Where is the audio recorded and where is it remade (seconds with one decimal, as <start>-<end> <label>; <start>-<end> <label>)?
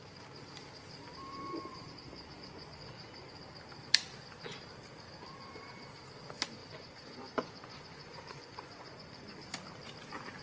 0.0-1.7 recorded; 1.7-3.3 remade; 3.3-6.6 recorded; 6.6-9.5 remade; 9.5-10.4 recorded